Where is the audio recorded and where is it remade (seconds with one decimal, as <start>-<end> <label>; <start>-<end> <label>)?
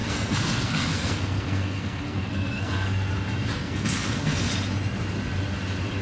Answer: 0.0-3.1 remade; 3.1-3.5 recorded; 3.5-4.5 remade; 4.5-6.0 recorded